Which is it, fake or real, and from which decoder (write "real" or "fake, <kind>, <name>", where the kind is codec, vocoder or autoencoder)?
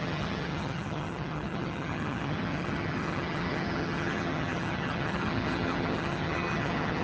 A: fake, vocoder, HiFi-GAN